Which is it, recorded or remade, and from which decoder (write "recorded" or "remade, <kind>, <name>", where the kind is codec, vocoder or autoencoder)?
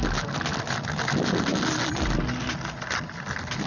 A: recorded